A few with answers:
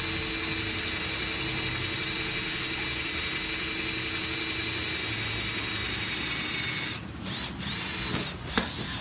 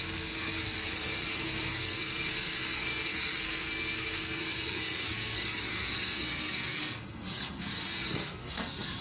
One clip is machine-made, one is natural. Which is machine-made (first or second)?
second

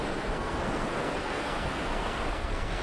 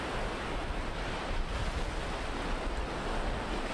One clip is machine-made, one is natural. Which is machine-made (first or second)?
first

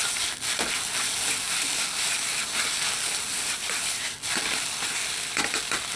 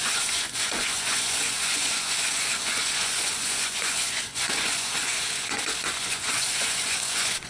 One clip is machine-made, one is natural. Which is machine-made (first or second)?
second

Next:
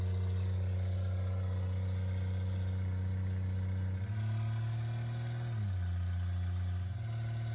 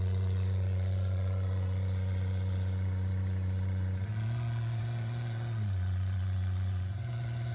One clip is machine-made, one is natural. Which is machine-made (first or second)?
second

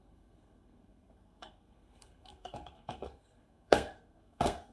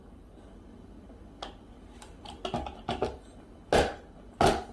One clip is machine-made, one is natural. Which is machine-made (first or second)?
first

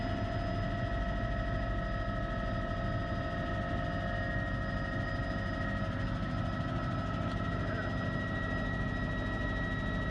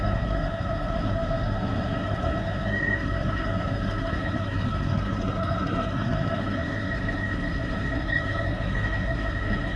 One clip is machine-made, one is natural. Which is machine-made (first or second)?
second